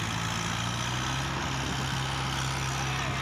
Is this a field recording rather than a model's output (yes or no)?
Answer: yes